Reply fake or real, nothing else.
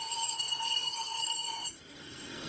fake